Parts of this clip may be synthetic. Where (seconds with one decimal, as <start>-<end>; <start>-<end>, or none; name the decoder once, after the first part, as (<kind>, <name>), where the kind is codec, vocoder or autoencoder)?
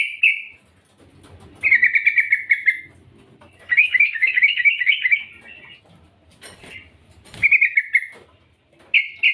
3.8-5.3 (autoencoder, DAC-VAE)